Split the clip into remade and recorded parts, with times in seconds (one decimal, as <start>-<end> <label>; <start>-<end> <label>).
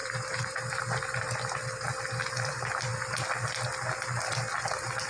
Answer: 0.0-0.8 remade; 0.8-5.1 recorded